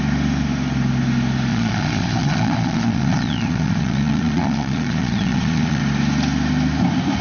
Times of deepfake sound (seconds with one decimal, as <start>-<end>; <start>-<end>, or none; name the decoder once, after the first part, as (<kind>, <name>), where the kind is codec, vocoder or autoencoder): 1.5-5.8 (vocoder, Vocos)